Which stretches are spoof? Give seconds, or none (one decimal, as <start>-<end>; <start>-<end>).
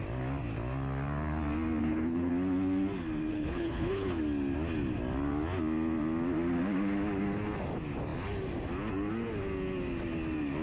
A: 1.8-2.3; 3.3-4.2